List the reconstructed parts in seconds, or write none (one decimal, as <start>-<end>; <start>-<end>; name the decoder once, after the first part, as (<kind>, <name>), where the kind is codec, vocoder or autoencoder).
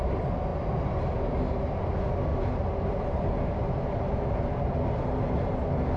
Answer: 2.3-5.6 (vocoder, BigVGAN v2)